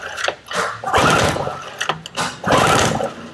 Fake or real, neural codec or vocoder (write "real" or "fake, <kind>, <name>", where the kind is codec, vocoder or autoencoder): real